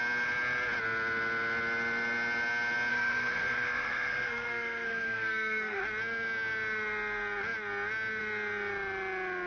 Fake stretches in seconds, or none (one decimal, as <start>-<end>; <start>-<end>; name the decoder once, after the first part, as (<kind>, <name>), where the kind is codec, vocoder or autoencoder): 2.9-5.8 (codec, SNAC)